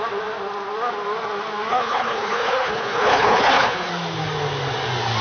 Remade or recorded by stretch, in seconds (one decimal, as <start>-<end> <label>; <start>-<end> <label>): 0.0-1.7 recorded; 1.7-3.9 remade; 3.9-5.2 recorded